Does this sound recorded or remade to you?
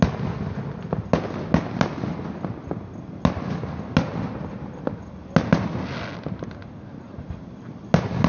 recorded